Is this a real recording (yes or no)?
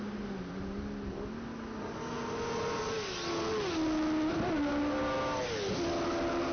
yes